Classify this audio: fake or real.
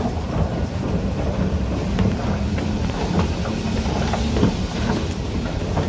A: real